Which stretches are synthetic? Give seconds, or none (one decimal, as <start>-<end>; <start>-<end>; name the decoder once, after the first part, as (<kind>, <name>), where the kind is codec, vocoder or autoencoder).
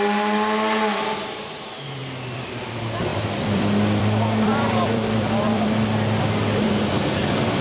2.0-2.5 (vocoder, BigVGAN v2); 3.1-6.9